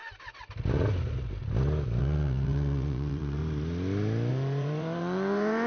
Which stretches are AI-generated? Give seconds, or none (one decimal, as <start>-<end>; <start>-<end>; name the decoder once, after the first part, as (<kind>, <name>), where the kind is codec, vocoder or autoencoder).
2.0-3.4 (vocoder, Vocos); 4.3-5.7